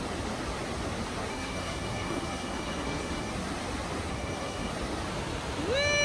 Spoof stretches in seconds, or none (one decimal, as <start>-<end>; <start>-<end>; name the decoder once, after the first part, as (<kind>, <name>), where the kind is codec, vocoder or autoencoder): 1.3-3.3 (codec, SNAC); 4.1-4.7